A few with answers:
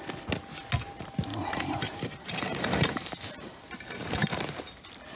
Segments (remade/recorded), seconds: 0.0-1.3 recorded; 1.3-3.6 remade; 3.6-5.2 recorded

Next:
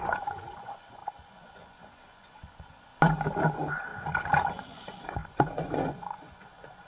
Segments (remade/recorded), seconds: 0.0-2.9 remade; 2.9-3.5 recorded; 3.5-3.9 remade; 3.9-4.5 recorded; 4.5-6.9 remade

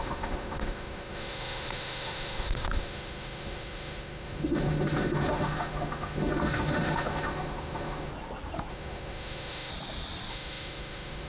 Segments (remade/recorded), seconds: 0.0-8.1 remade; 8.1-8.7 recorded; 8.7-9.7 remade; 9.7-10.3 recorded; 10.3-11.3 remade

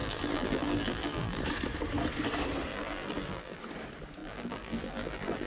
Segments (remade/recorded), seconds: 0.0-1.4 remade; 1.4-2.7 recorded; 2.7-3.6 remade; 3.6-4.2 recorded; 4.2-5.5 remade

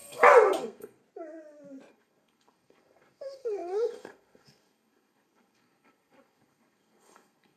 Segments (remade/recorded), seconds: 0.0-1.0 remade; 1.0-1.9 recorded; 1.9-7.6 remade

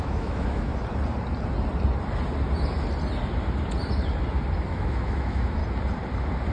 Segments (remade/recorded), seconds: 0.0-0.7 remade; 0.7-4.6 recorded; 4.6-5.6 remade; 5.6-6.5 recorded